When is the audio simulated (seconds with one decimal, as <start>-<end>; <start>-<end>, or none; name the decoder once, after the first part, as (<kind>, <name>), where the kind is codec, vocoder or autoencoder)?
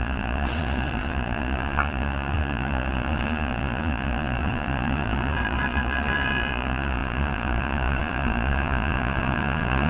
0.0-9.9 (vocoder, Vocos)